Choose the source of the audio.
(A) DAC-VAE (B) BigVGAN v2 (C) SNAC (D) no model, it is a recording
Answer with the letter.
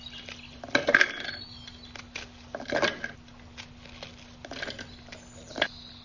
D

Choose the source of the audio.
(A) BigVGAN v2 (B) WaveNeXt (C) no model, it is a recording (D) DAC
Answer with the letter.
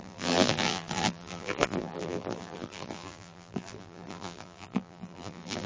A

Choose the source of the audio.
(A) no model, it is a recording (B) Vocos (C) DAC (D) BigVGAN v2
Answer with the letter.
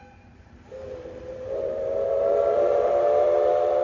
D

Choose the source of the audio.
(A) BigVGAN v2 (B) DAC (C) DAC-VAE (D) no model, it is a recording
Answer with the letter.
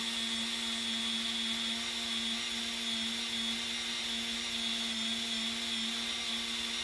D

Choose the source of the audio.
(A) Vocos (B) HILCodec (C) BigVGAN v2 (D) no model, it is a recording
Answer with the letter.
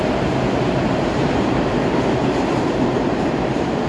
C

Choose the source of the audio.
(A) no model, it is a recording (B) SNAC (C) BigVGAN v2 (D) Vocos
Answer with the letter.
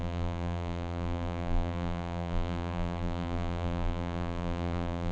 C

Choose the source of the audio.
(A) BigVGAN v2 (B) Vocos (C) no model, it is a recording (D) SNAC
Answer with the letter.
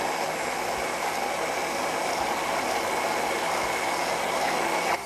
C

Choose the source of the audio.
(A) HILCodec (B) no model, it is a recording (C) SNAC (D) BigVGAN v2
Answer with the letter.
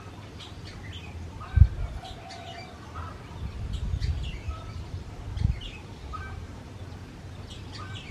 B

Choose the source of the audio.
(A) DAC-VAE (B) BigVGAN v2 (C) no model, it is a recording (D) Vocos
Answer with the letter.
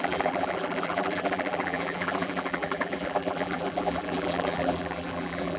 B